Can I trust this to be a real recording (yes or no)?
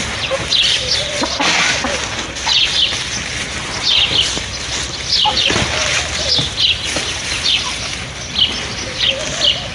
yes